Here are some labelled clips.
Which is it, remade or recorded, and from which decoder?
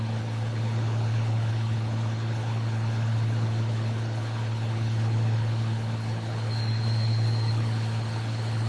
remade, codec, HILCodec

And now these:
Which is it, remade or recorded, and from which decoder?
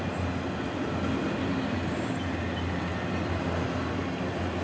recorded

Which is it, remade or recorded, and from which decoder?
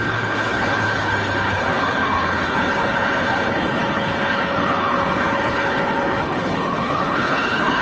remade, codec, HILCodec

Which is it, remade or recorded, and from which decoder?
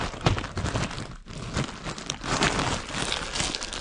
recorded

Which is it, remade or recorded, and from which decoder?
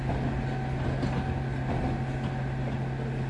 recorded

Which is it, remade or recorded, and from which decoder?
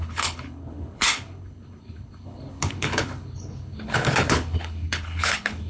remade, codec, HILCodec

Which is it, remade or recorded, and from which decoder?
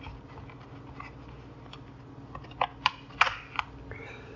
recorded